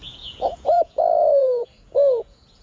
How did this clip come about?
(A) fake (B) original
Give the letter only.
A